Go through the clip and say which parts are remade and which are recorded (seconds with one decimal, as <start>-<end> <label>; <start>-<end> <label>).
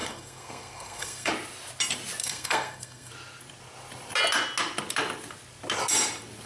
0.0-1.3 remade; 1.3-2.2 recorded; 2.2-3.1 remade; 3.1-6.5 recorded